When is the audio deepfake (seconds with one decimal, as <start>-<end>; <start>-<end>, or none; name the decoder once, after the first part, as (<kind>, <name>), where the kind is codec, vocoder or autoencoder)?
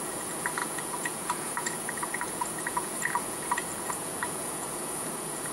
0.0-5.5 (vocoder, Vocos)